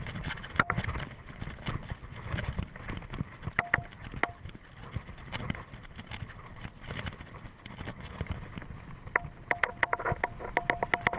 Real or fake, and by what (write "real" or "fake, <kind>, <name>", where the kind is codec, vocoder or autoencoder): real